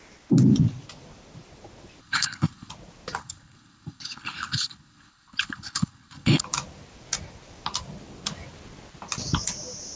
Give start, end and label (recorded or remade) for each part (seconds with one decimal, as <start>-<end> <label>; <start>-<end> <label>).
0.0-2.0 recorded; 2.0-2.7 remade; 2.7-3.2 recorded; 3.2-6.4 remade; 6.4-10.0 recorded